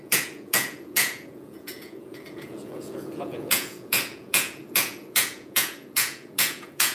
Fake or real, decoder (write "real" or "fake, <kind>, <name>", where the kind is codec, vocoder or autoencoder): fake, vocoder, Vocos